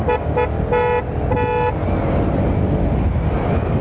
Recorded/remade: recorded